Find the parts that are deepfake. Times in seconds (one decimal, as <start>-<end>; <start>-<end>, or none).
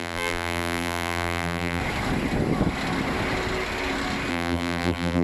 0.0-1.8; 4.3-5.2